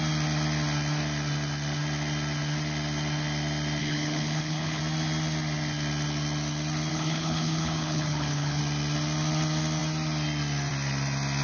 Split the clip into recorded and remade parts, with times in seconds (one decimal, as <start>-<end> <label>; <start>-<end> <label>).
0.0-3.8 recorded; 3.8-4.8 remade; 4.8-6.9 recorded; 6.9-8.6 remade; 8.6-11.4 recorded